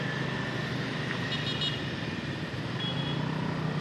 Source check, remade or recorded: recorded